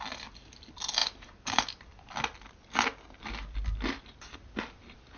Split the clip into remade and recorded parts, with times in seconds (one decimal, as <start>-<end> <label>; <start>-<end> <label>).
0.0-5.2 recorded

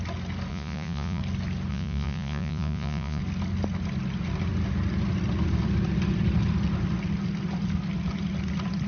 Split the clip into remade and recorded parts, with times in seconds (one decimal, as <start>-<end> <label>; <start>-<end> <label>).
0.0-0.5 recorded; 0.5-1.2 remade; 1.2-1.7 recorded; 1.7-3.2 remade; 3.2-8.9 recorded

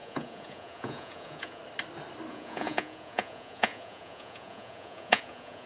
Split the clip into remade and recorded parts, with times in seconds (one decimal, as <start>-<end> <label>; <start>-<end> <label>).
0.0-1.6 remade; 1.6-2.3 recorded; 2.3-5.7 remade

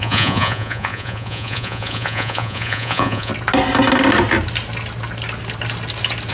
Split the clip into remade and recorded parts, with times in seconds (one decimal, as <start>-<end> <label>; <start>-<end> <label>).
0.0-3.3 remade; 3.3-6.3 recorded

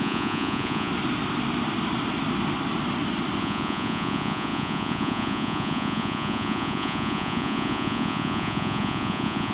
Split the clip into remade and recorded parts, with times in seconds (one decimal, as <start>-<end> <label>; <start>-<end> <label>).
0.0-0.9 remade; 0.9-3.4 recorded; 3.4-9.5 remade

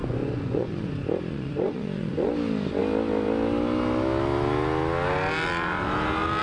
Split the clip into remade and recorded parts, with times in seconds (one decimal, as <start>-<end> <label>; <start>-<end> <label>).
0.0-0.9 remade; 0.9-1.3 recorded; 1.3-2.3 remade; 2.3-6.4 recorded